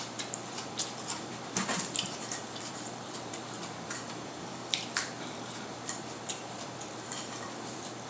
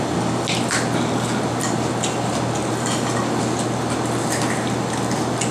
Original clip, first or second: second